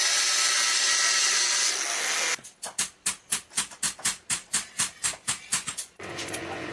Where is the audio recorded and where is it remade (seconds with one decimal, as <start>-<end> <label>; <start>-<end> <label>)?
0.0-5.5 recorded; 5.5-6.7 remade